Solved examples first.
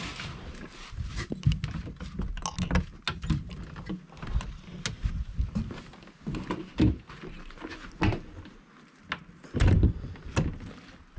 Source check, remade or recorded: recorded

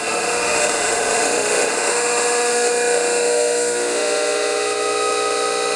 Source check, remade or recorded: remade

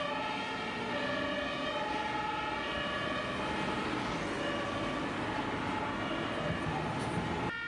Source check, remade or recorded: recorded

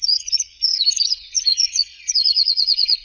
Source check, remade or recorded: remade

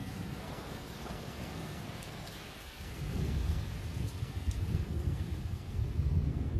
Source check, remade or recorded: remade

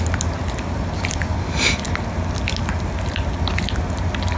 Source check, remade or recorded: recorded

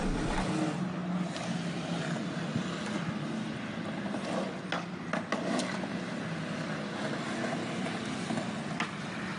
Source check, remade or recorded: recorded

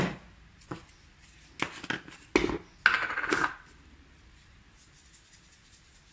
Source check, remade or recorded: recorded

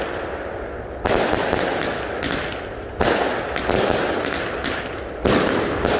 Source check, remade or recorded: recorded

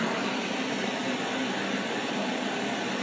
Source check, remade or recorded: recorded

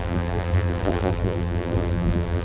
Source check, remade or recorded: remade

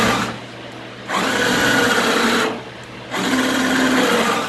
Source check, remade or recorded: recorded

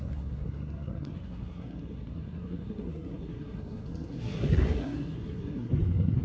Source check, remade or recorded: remade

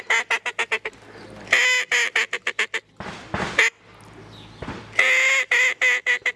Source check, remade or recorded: recorded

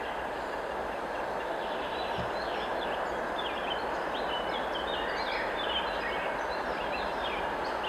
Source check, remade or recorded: recorded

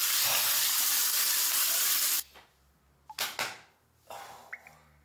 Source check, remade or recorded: recorded